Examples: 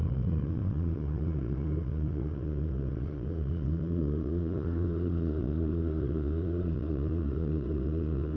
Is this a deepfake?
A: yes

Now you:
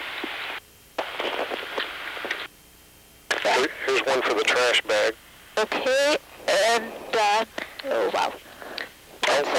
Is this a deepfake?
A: no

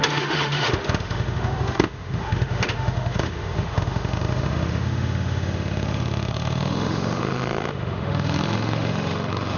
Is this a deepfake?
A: yes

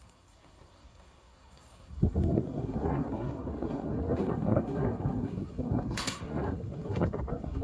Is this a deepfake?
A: yes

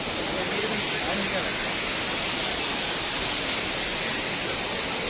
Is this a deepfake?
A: no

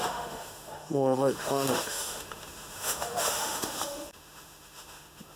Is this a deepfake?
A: yes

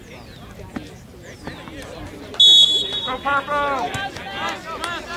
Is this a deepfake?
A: no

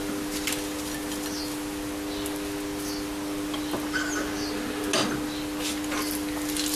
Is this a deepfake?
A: no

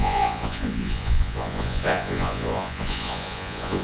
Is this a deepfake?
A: yes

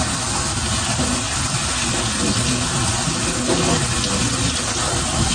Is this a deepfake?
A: no